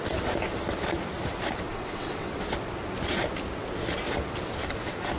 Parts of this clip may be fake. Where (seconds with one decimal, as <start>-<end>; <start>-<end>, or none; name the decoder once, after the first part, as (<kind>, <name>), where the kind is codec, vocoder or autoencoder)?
1.7-2.3 (vocoder, WaveNeXt)